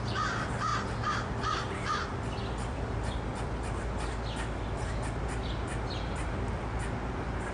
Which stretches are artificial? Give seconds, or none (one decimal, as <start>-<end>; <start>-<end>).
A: none